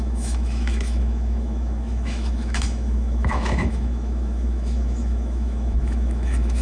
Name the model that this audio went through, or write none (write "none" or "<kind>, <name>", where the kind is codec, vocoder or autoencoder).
autoencoder, DAC-VAE